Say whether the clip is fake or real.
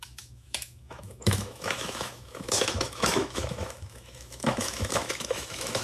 fake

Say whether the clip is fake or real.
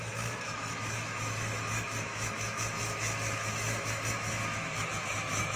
fake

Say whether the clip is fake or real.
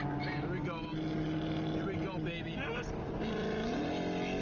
real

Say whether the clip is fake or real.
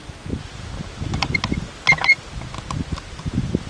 real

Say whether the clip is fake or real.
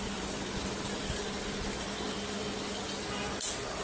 real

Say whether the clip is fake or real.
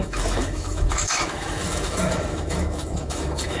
fake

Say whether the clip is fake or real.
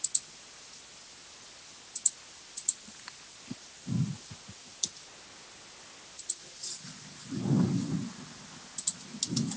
real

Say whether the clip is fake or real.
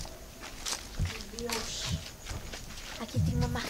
real